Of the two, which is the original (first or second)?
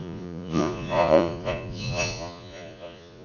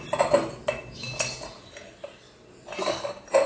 second